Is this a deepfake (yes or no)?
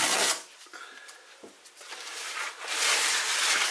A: no